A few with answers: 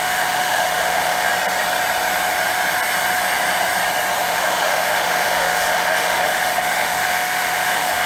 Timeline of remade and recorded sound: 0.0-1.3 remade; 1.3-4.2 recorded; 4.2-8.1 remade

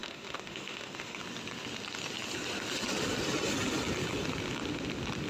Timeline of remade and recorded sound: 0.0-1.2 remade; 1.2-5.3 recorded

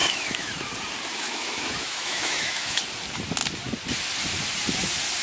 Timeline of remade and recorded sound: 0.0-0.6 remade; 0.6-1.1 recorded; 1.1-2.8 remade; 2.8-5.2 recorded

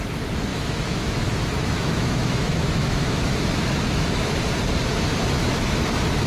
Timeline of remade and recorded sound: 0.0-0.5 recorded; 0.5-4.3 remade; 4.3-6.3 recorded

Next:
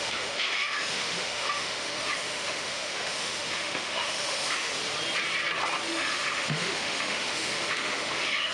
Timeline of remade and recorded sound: 0.0-4.7 remade; 4.7-5.9 recorded; 5.9-8.5 remade